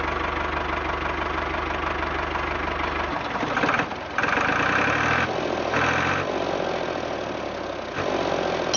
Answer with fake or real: real